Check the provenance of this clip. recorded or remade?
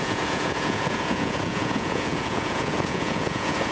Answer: remade